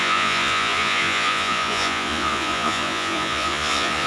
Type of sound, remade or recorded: remade